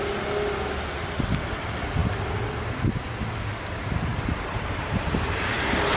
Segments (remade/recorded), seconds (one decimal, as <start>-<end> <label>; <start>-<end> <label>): 0.0-6.0 recorded